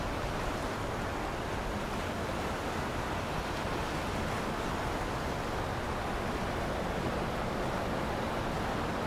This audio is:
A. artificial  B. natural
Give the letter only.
B